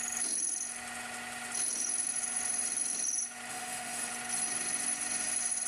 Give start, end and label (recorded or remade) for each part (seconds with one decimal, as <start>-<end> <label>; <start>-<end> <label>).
0.0-3.5 recorded; 3.5-4.1 remade; 4.1-5.7 recorded